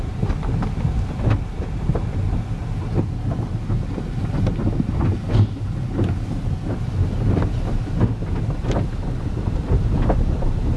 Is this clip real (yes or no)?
yes